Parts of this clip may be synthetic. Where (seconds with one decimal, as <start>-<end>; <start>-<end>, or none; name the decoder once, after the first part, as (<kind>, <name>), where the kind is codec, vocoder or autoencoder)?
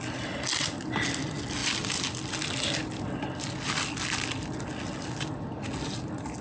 none